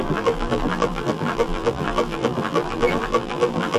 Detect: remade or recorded remade